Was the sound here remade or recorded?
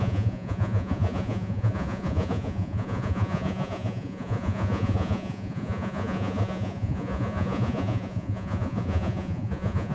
remade